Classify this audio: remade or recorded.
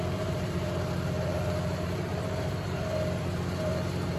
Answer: remade